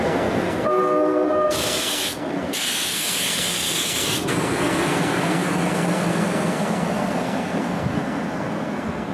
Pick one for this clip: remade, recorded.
remade